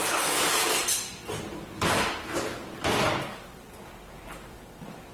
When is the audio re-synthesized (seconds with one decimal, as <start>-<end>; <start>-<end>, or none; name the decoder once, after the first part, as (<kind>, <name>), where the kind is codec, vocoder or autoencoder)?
0.8-3.9 (vocoder, BigVGAN v2)